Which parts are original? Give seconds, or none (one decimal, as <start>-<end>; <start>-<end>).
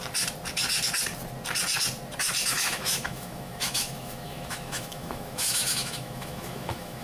0.0-2.5